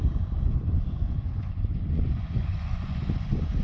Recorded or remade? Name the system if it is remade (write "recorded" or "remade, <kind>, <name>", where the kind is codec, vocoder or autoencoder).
remade, vocoder, Vocos